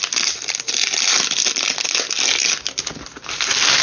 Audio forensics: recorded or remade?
recorded